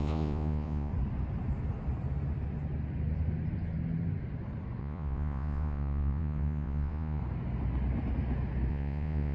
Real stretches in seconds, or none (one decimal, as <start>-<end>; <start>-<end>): 0.9-4.8; 7.2-8.7